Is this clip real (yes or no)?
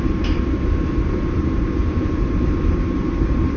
no